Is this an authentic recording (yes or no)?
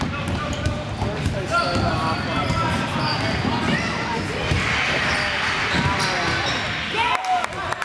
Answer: yes